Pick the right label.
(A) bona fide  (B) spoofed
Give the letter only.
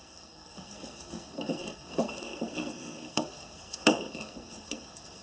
B